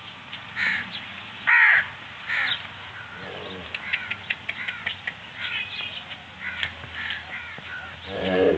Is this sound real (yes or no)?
yes